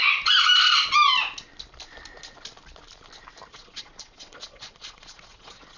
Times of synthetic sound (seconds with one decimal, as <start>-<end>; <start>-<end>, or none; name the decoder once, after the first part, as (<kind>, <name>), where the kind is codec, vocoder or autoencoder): 3.5-5.8 (vocoder, Vocos)